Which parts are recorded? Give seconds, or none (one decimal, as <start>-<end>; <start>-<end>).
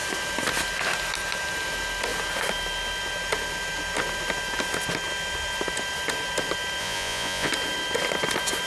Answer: 0.0-6.8; 7.5-8.7